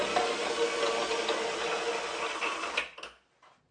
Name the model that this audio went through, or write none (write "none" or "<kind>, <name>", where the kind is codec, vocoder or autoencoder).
none